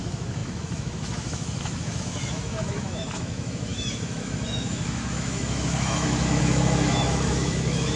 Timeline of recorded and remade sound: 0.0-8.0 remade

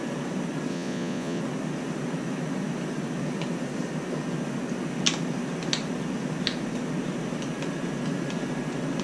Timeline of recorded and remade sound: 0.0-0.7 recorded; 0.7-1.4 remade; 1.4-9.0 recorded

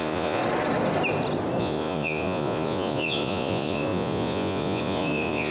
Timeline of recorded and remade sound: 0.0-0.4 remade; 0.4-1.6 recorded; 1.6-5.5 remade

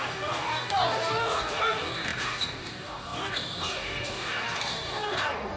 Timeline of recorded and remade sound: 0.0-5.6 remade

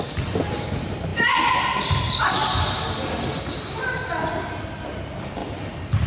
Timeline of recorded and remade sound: 0.0-6.1 recorded